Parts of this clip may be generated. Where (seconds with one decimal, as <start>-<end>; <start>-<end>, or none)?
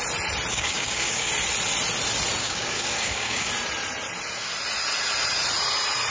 0.5-1.3; 2.4-3.5